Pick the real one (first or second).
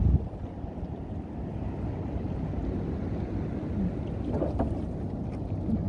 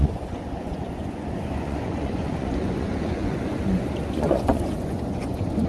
first